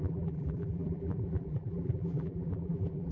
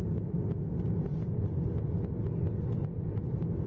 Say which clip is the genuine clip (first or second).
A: second